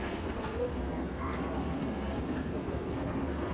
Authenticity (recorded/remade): remade